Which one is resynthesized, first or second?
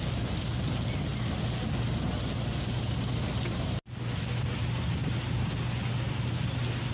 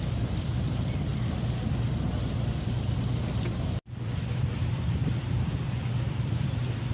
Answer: second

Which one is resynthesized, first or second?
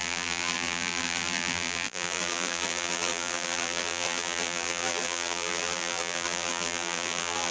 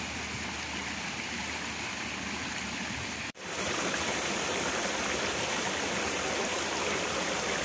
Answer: first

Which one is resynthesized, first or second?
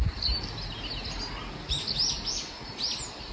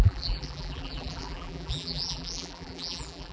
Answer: second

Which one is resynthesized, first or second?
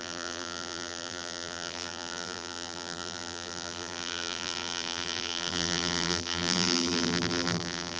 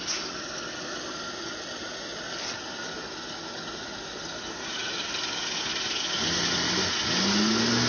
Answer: first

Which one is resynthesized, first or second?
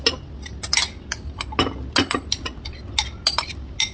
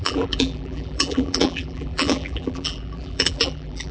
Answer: second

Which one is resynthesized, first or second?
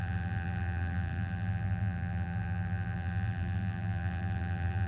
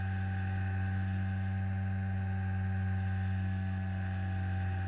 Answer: first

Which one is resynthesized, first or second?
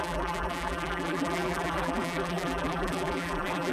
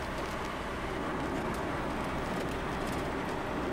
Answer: first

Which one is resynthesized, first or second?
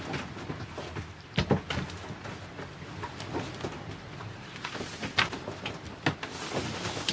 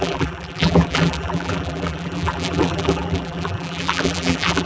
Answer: second